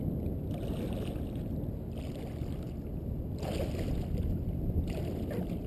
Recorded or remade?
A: recorded